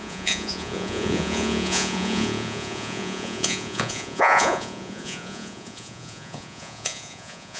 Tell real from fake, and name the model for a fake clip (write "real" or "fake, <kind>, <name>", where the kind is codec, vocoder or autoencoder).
fake, vocoder, Vocos